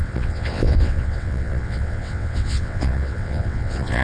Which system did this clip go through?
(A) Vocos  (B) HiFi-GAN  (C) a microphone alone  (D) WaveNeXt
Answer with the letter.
D